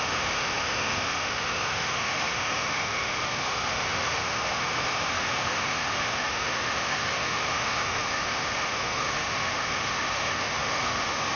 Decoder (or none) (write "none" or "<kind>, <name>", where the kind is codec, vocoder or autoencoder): autoencoder, DAC-VAE